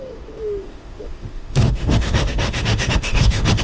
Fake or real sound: fake